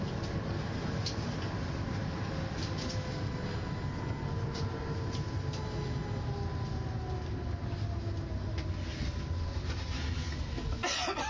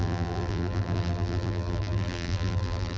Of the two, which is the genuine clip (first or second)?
first